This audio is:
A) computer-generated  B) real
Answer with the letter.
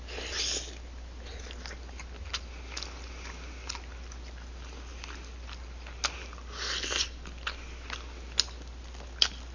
B